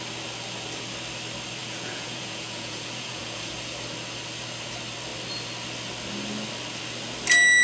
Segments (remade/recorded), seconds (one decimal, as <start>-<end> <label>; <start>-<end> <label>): 0.0-1.6 recorded; 1.6-3.5 remade; 3.5-7.6 recorded